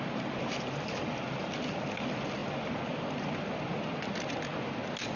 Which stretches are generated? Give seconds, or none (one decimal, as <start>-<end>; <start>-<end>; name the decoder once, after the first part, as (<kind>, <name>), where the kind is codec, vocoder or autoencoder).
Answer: none